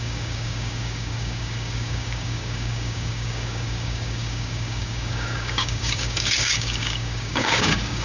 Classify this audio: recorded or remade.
remade